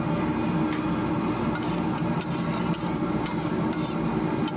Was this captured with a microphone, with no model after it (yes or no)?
yes